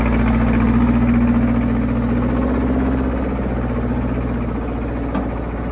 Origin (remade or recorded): recorded